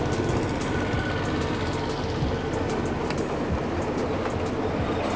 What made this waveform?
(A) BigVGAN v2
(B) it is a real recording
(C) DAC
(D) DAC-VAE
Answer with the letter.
B